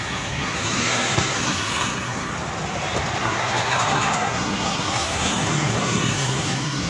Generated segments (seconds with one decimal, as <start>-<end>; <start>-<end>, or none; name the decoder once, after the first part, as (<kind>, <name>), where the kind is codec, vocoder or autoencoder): 0.0-2.3 (codec, SNAC); 3.2-6.9